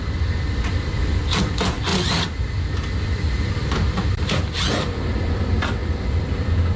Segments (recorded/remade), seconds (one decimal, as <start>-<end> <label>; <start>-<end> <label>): 0.0-6.8 remade

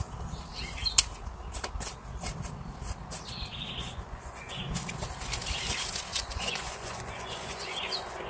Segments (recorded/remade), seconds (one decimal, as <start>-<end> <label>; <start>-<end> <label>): 0.0-3.5 recorded; 3.5-4.8 remade; 4.8-6.1 recorded; 6.1-8.3 remade

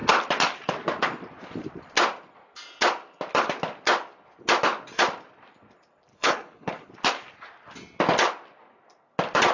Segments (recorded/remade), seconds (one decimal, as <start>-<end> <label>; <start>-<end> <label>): 0.0-6.1 recorded; 6.1-6.9 remade; 6.9-9.5 recorded

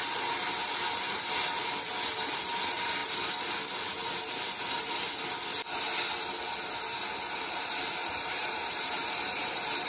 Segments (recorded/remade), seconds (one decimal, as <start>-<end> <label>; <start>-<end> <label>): 0.0-1.6 remade; 1.6-2.4 recorded; 2.4-3.0 remade; 3.0-7.5 recorded; 7.5-9.9 remade

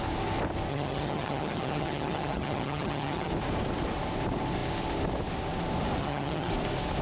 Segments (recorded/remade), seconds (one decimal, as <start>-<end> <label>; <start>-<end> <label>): 0.0-0.7 recorded; 0.7-3.3 remade; 3.3-6.0 recorded; 6.0-6.5 remade; 6.5-7.0 recorded

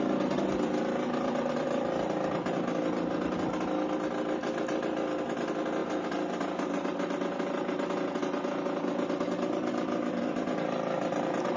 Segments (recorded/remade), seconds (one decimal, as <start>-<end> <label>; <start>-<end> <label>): 0.0-11.6 recorded

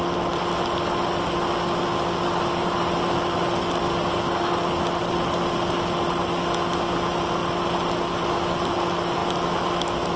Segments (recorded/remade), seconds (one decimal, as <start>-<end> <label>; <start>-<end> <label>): 0.0-10.2 recorded